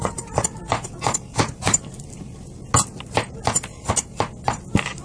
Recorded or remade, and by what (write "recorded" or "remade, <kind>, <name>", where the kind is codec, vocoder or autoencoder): recorded